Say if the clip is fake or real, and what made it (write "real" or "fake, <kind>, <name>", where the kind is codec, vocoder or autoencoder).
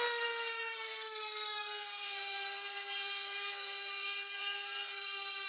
fake, codec, SNAC